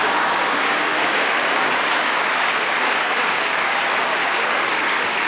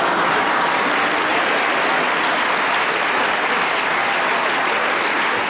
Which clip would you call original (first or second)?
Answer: second